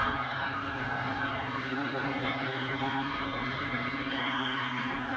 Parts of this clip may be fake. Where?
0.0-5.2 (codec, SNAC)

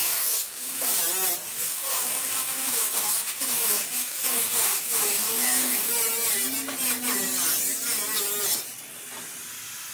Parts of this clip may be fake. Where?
0.0-1.0 (codec, DAC); 1.5-5.9